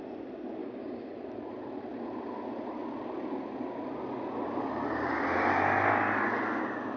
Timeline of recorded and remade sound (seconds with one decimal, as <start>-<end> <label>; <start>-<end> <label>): 0.0-0.6 recorded; 0.6-1.1 remade; 1.1-7.0 recorded